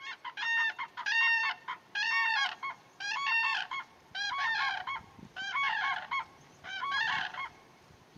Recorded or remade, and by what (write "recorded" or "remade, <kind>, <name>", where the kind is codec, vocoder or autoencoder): remade, vocoder, BigVGAN v2